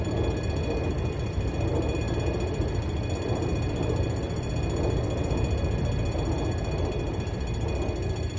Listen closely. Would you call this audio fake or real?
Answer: real